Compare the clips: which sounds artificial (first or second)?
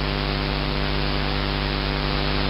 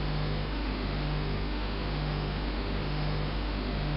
second